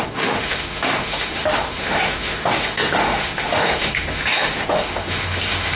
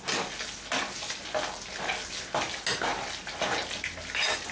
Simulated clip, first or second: first